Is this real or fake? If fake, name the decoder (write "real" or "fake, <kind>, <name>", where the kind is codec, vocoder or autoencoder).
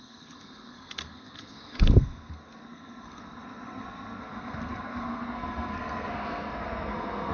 fake, codec, SNAC